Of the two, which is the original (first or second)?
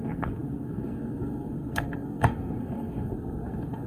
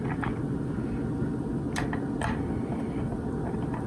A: second